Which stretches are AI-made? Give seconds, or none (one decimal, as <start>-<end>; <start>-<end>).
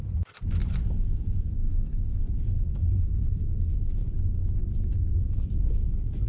1.6-2.2; 2.8-3.6